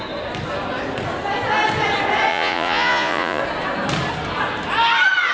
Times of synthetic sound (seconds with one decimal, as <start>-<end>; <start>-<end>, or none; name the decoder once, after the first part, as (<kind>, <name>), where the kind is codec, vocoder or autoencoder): 2.3-3.4 (vocoder, Vocos)